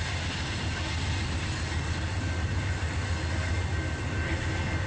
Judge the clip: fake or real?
real